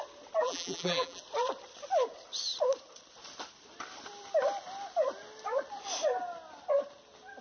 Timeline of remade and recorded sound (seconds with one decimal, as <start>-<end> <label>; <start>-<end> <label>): 0.0-0.4 recorded; 0.4-1.2 remade; 1.2-7.4 recorded